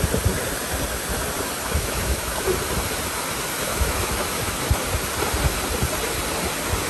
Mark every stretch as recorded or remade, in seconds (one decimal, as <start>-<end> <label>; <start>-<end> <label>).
0.0-1.6 recorded; 1.6-2.4 remade; 2.4-3.6 recorded; 3.6-4.8 remade; 4.8-6.9 recorded